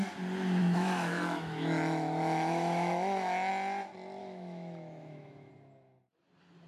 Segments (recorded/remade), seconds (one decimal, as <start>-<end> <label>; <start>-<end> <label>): 0.0-0.6 recorded; 0.6-3.5 remade; 3.5-4.2 recorded; 4.2-5.5 remade; 5.5-6.7 recorded